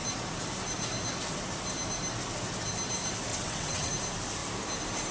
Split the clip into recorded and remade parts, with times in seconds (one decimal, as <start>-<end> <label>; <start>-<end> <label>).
0.0-3.3 recorded; 3.3-3.9 remade; 3.9-5.1 recorded